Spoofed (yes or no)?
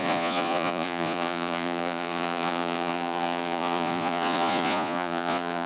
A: yes